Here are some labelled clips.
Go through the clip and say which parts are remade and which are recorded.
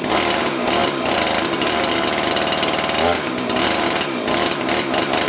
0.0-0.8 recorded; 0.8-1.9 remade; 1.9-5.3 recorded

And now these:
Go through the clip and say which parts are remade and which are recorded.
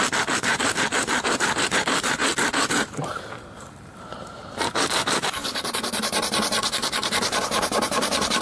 0.0-8.4 remade